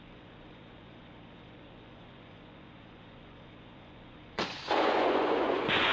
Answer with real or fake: fake